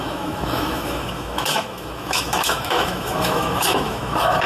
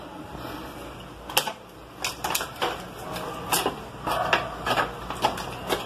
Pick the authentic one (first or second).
second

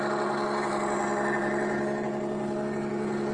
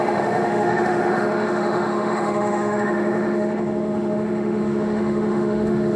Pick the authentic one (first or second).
first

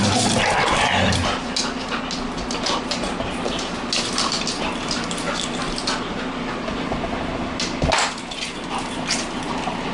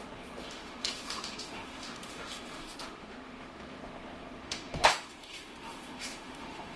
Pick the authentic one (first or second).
first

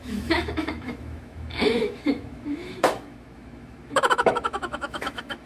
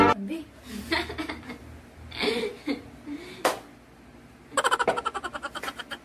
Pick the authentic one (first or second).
second